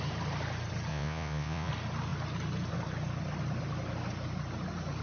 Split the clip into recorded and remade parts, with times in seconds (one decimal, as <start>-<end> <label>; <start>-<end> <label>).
0.0-0.9 recorded; 0.9-1.7 remade; 1.7-5.0 recorded